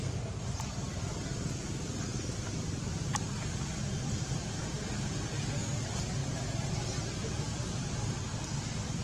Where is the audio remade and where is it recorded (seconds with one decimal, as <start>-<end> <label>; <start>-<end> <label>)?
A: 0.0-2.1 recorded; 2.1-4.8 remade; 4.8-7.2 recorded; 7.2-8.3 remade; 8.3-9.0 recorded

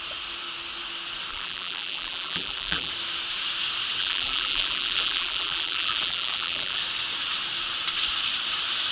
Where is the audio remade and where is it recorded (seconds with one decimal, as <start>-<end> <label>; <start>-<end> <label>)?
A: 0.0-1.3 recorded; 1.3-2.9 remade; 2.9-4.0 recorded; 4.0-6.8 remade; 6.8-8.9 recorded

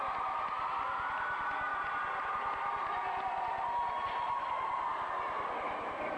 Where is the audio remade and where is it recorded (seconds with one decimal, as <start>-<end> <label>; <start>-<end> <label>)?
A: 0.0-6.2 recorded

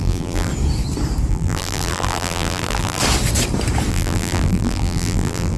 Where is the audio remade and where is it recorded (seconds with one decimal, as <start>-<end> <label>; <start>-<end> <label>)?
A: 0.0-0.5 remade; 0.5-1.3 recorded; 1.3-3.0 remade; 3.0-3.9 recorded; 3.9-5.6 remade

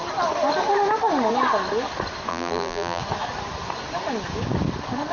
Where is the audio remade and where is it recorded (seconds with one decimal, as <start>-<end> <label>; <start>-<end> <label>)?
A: 0.0-2.3 recorded; 2.3-3.0 remade; 3.0-5.1 recorded

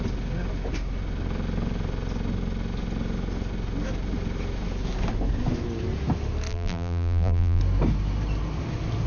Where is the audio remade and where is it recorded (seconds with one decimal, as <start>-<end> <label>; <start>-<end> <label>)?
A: 0.0-6.5 recorded; 6.5-7.6 remade; 7.6-9.1 recorded

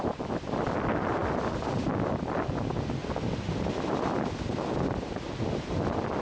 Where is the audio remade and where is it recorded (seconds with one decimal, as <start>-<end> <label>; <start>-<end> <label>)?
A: 0.0-6.2 recorded

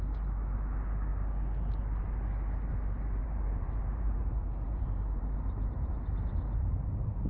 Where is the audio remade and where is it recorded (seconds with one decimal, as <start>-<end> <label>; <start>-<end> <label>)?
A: 0.0-3.2 recorded; 3.2-5.9 remade; 5.9-7.3 recorded